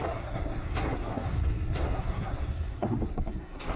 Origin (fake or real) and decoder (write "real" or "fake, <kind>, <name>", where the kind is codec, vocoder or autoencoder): fake, codec, SNAC